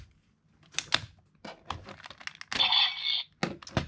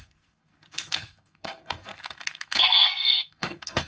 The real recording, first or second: first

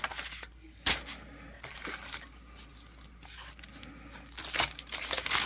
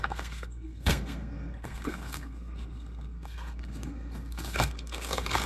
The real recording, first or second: first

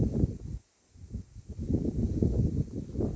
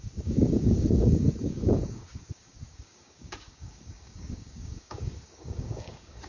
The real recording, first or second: first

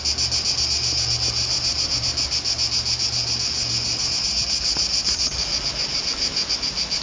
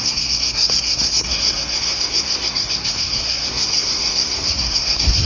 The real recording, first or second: first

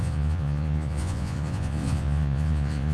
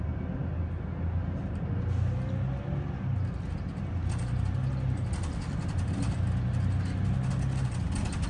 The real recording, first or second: second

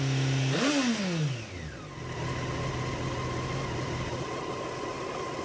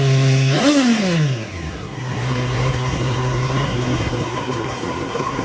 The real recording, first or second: first